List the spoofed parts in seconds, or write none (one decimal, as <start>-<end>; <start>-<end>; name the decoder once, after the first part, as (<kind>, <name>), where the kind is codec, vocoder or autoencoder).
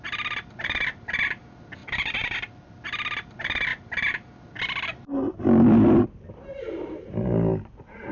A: 1.8-2.7 (vocoder, BigVGAN v2); 5.3-7.1